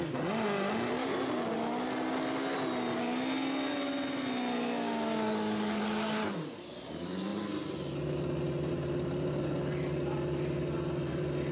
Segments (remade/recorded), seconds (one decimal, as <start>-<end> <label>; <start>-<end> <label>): 0.0-11.5 recorded